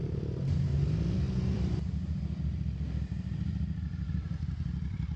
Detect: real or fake fake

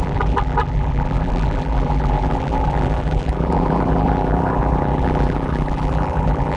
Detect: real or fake fake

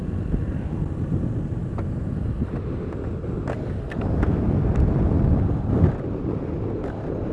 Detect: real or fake real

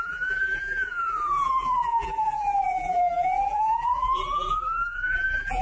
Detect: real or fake fake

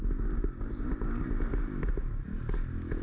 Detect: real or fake real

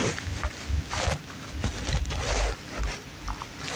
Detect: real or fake real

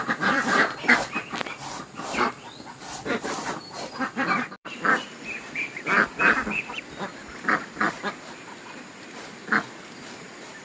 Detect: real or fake fake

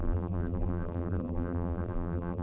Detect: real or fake fake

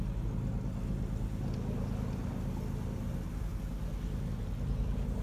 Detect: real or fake real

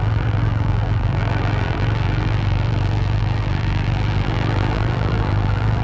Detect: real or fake fake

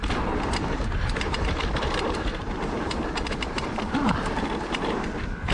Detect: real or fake fake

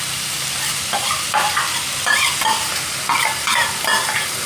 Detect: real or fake real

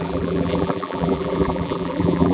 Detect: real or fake fake